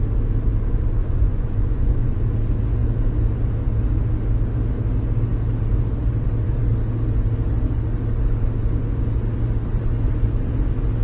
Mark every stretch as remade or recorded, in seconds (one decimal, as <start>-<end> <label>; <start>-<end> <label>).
0.0-1.0 recorded; 1.0-2.2 remade; 2.2-11.0 recorded